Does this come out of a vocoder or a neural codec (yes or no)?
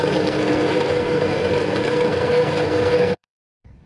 yes